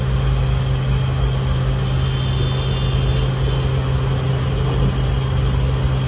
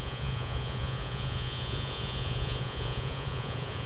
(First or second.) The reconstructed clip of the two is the second